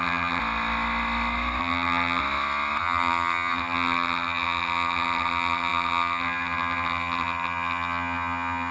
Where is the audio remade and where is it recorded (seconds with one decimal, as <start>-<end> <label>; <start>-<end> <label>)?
0.0-0.4 remade; 0.4-1.6 recorded; 1.6-2.2 remade; 2.2-2.8 recorded; 2.8-8.7 remade